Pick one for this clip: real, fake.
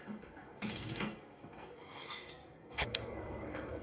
fake